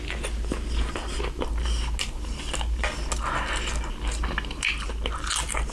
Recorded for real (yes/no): yes